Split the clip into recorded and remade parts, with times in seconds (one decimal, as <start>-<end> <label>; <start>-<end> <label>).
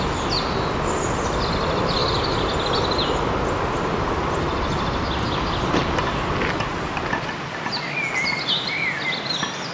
0.0-9.7 recorded